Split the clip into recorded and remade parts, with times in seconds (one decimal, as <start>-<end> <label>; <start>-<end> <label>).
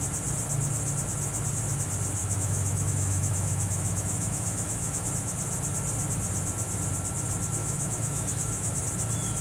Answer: 0.0-2.2 recorded; 2.2-5.1 remade; 5.1-7.6 recorded; 7.6-8.8 remade; 8.8-9.4 recorded